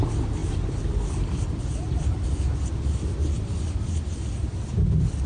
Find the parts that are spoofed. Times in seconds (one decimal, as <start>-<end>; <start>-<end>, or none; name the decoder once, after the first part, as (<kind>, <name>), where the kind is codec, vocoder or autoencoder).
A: none